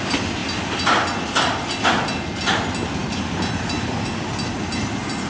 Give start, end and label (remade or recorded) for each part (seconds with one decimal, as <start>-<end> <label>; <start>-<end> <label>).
0.0-5.3 recorded